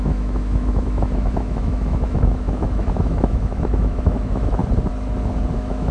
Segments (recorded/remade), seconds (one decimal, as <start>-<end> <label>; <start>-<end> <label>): 0.0-4.6 remade; 4.6-5.5 recorded; 5.5-5.9 remade